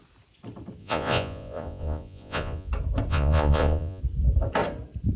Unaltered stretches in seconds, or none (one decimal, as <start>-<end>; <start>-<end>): 0.0-0.8; 2.7-3.1; 4.0-5.2